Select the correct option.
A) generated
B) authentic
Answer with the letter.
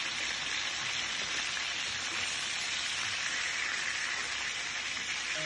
B